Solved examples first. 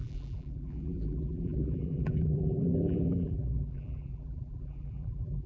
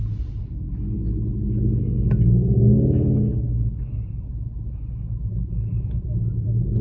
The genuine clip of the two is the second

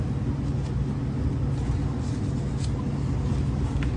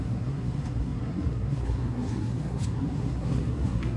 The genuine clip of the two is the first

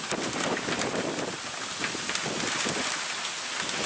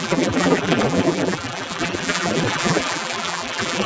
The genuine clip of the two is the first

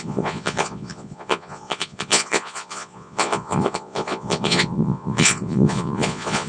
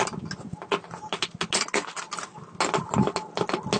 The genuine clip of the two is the second